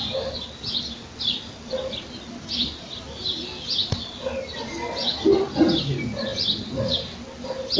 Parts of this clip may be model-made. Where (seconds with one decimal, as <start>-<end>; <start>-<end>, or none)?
none

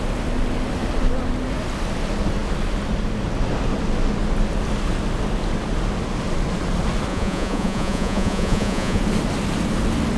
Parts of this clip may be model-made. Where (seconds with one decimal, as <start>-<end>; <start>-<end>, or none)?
7.1-9.0

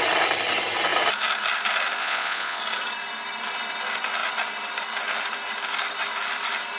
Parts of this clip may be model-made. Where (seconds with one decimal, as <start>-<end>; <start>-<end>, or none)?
2.0-2.6